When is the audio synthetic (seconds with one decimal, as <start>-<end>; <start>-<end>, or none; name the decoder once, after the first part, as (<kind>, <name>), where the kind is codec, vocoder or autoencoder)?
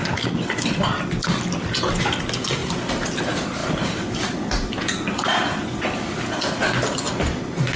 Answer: none